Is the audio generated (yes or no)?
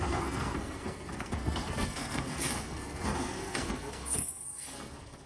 yes